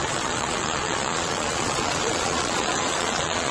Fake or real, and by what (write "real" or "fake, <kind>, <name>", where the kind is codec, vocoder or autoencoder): fake, vocoder, Vocos